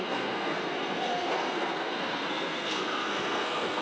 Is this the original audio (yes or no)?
no